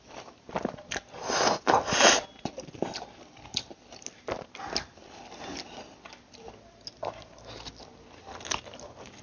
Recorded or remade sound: recorded